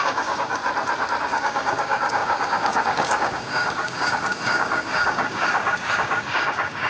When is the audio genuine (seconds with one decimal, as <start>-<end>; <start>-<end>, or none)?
0.6-1.2